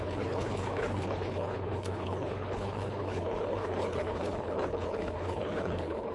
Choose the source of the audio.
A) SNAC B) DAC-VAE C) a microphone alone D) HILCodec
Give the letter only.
D